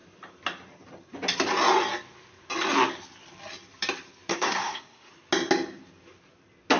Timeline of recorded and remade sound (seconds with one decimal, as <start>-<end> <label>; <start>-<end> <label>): 0.0-4.3 recorded; 4.3-5.1 remade; 5.1-6.8 recorded